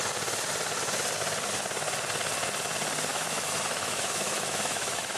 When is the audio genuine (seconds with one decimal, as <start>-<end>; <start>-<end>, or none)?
0.0-3.1